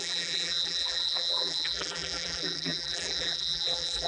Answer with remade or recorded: remade